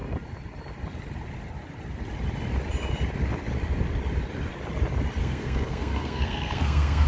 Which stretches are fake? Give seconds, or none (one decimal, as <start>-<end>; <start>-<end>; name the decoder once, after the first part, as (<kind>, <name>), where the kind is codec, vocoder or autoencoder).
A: 5.2-7.1 (codec, SNAC)